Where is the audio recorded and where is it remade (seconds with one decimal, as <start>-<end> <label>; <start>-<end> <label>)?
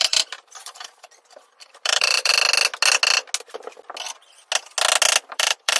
0.0-2.3 remade; 2.3-5.3 recorded; 5.3-5.8 remade